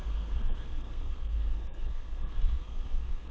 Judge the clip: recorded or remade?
remade